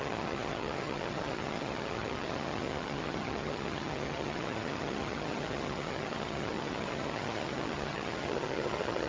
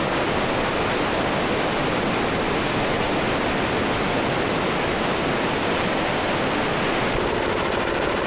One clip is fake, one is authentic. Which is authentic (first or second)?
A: second